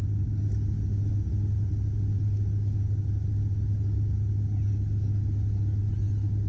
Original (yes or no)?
yes